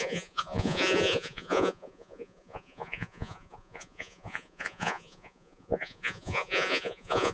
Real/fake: fake